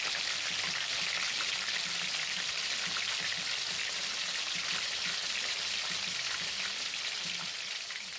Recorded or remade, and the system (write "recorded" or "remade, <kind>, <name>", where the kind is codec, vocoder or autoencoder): recorded